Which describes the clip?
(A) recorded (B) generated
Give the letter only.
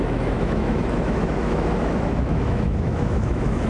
B